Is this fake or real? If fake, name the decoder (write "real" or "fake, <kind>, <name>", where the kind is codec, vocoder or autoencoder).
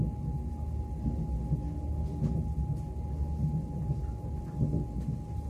real